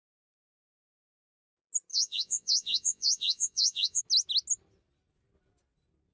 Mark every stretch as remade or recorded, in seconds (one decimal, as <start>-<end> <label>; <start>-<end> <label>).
0.0-1.9 recorded; 1.9-4.0 remade; 4.0-6.1 recorded